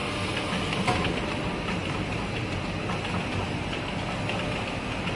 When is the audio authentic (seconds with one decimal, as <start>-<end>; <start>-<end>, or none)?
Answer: 0.0-5.2